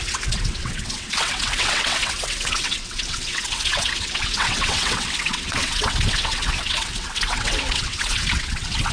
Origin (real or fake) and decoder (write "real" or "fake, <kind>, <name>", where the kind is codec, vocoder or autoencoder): fake, vocoder, WaveNeXt